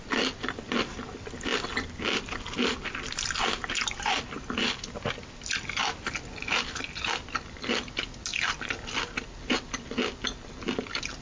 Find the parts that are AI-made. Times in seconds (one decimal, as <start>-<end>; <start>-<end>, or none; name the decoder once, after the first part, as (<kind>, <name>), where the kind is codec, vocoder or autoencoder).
1.5-4.4 (vocoder, BigVGAN v2); 8.3-9.0